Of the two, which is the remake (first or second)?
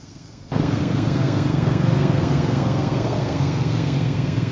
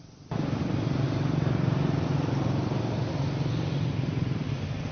first